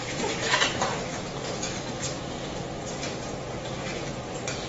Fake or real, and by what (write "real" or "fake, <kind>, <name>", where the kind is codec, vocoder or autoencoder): real